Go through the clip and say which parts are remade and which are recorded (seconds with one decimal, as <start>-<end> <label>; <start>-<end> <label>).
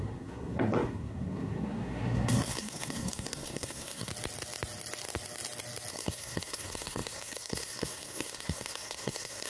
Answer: 0.0-4.1 remade; 4.1-5.9 recorded; 5.9-9.5 remade